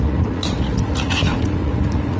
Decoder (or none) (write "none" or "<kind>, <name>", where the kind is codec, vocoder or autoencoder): vocoder, Vocos